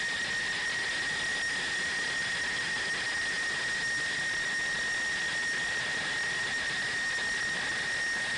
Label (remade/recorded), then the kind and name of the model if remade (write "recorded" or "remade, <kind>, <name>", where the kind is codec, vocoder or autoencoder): recorded